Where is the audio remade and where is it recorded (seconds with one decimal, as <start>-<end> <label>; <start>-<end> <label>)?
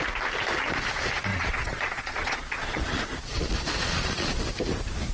0.0-1.3 recorded; 1.3-4.4 remade; 4.4-5.1 recorded